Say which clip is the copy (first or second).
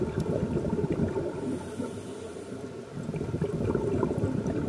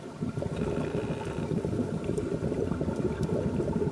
second